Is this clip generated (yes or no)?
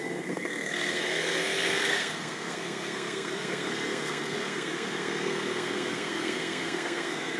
yes